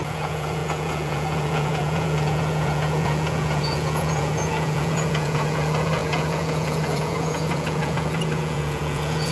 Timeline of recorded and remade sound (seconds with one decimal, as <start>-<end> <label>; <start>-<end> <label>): 0.0-9.3 remade